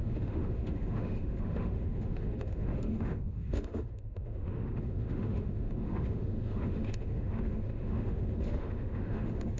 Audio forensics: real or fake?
fake